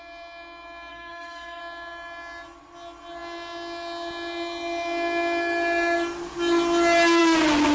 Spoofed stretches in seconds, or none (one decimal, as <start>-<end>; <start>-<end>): 0.9-1.6